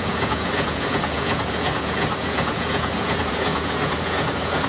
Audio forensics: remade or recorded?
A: remade